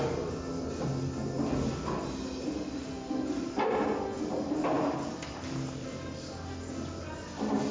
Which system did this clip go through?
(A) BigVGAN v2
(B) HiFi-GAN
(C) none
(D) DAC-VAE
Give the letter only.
C